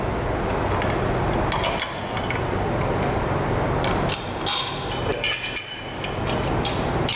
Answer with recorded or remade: recorded